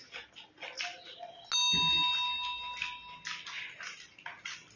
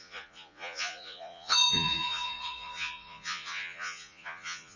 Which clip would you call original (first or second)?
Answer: first